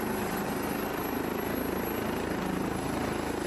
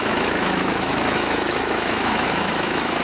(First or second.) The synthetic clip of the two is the second